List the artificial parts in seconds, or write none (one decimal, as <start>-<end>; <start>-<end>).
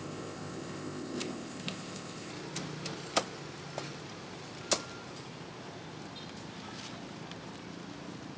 0.0-2.3